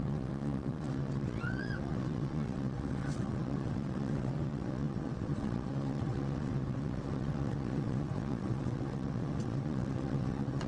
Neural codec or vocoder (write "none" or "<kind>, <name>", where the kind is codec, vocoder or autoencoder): vocoder, WaveNeXt